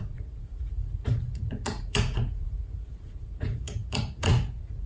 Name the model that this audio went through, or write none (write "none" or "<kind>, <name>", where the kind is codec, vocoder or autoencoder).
vocoder, Vocos